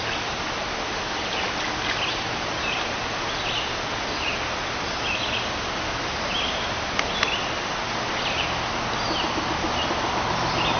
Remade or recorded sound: recorded